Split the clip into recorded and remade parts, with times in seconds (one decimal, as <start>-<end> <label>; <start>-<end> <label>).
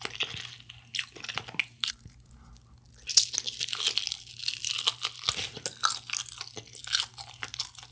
0.0-1.6 recorded; 1.6-2.5 remade; 2.5-7.9 recorded